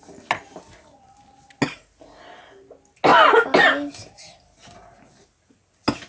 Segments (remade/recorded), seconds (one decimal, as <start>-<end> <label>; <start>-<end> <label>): 0.0-6.1 recorded

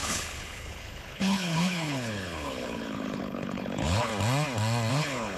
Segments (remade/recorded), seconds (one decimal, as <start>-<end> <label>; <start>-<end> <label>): 0.0-4.1 remade; 4.1-4.9 recorded; 4.9-5.4 remade

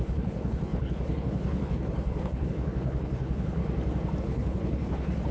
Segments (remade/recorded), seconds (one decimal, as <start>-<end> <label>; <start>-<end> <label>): 0.0-3.6 remade; 3.6-4.2 recorded; 4.2-5.3 remade

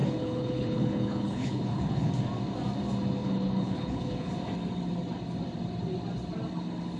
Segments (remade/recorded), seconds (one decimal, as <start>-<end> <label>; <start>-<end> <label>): 0.0-2.1 remade; 2.1-3.2 recorded; 3.2-4.3 remade; 4.3-7.0 recorded

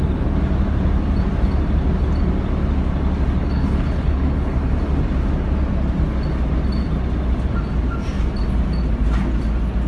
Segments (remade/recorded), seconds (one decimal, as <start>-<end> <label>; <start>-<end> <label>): 0.0-3.4 recorded; 3.4-4.7 remade; 4.7-9.9 recorded

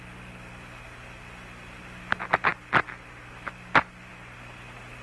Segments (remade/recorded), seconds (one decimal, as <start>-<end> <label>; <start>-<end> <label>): 0.0-5.0 recorded

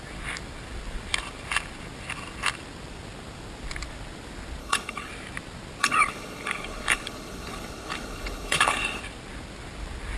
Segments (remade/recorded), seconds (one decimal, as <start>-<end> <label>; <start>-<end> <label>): 0.0-4.6 recorded; 4.6-5.1 remade; 5.1-5.8 recorded; 5.8-9.0 remade; 9.0-10.2 recorded

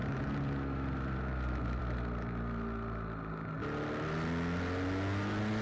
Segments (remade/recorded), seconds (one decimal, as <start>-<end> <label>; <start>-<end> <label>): 0.0-5.6 recorded